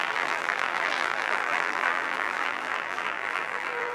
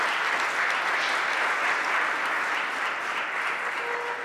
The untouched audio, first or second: second